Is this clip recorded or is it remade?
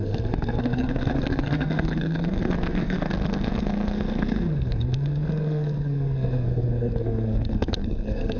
remade